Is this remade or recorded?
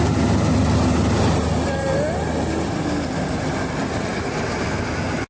recorded